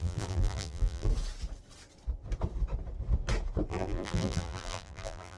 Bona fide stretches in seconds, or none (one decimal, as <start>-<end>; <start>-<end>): 1.1-3.7